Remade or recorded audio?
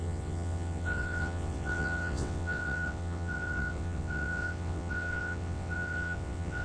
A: remade